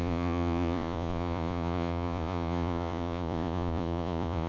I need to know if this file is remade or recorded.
remade